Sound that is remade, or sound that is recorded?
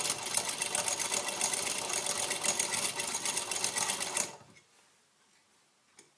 recorded